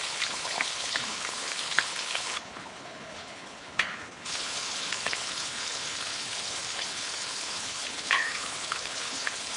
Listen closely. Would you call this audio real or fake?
fake